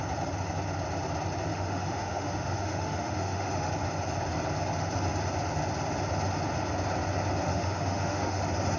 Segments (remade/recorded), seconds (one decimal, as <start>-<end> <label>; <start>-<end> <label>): 0.0-1.5 recorded; 1.5-3.7 remade; 3.7-7.5 recorded; 7.5-8.4 remade; 8.4-8.8 recorded